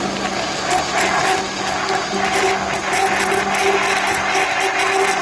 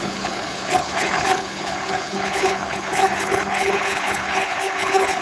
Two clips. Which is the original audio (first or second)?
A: first